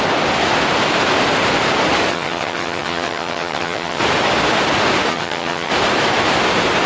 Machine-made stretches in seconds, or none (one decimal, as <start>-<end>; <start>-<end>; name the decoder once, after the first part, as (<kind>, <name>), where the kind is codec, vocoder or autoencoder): 2.1-4.0 (vocoder, HiFi-GAN); 5.1-5.7